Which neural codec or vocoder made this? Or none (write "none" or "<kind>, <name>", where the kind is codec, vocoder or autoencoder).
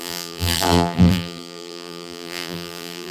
vocoder, BigVGAN v2